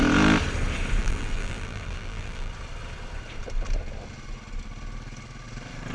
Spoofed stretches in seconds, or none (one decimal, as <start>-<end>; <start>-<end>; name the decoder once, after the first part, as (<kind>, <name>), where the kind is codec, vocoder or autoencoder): 1.0-2.5 (vocoder, BigVGAN v2)